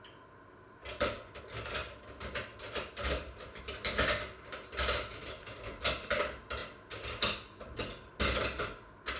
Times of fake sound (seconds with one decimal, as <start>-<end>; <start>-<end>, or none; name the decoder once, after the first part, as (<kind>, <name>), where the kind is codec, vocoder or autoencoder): 0.8-1.4 (vocoder, BigVGAN v2); 1.8-3.6